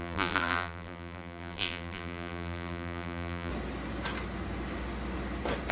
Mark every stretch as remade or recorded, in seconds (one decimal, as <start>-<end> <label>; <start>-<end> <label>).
0.0-3.5 remade; 3.5-5.7 recorded